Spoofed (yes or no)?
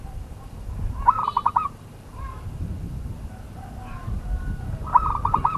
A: yes